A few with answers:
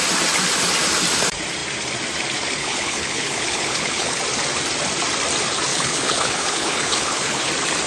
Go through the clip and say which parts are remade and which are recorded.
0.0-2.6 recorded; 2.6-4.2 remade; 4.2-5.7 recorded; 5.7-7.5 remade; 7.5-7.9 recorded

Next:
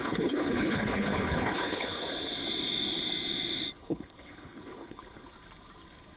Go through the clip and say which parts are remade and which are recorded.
0.0-2.0 remade; 2.0-3.8 recorded; 3.8-5.3 remade; 5.3-6.2 recorded

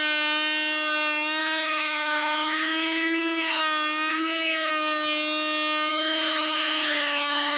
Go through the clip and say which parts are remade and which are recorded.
0.0-1.4 recorded; 1.4-3.6 remade; 3.6-4.1 recorded; 4.1-4.7 remade; 4.7-5.9 recorded; 5.9-7.6 remade

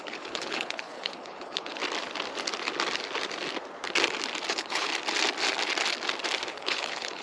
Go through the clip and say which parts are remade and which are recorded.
0.0-1.8 remade; 1.8-4.5 recorded; 4.5-4.9 remade; 4.9-6.5 recorded; 6.5-7.2 remade

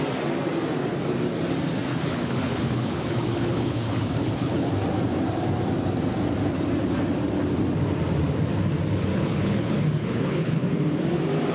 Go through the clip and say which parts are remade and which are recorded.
0.0-1.9 recorded; 1.9-4.7 remade; 4.7-9.1 recorded; 9.1-10.9 remade; 10.9-11.5 recorded

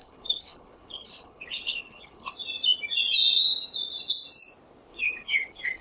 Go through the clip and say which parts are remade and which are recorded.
0.0-2.3 remade; 2.3-4.9 recorded; 4.9-5.8 remade

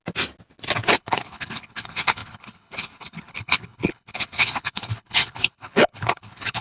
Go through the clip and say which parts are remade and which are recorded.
0.0-1.0 recorded; 1.0-6.6 remade